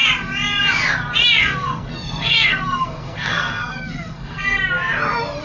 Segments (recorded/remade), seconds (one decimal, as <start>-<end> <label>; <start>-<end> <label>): 0.0-1.4 recorded; 1.4-4.6 remade; 4.6-5.4 recorded